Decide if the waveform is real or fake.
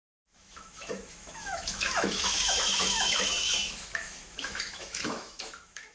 fake